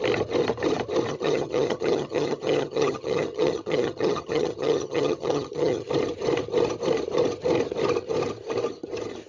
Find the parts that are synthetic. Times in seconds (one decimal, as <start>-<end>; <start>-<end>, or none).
1.1-5.9